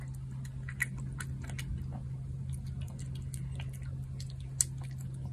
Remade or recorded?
recorded